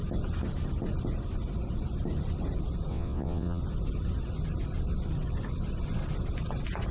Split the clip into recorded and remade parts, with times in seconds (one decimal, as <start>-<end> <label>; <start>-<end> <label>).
0.0-2.9 recorded; 2.9-3.6 remade; 3.6-6.9 recorded